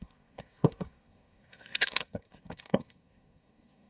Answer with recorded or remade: remade